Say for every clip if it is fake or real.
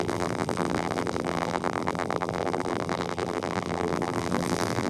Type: fake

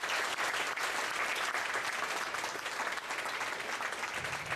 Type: real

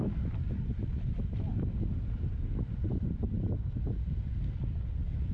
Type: real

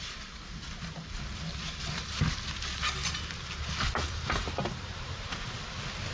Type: fake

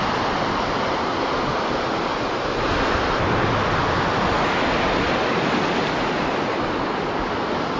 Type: real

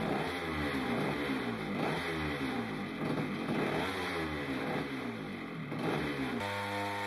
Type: real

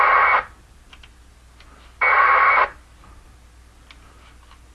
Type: real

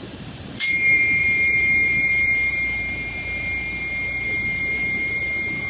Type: fake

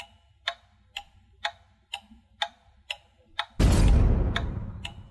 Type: real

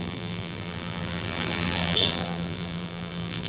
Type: fake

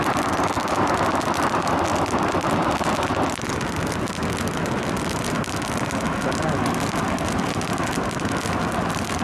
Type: real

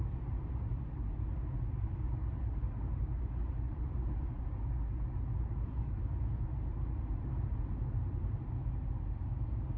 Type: fake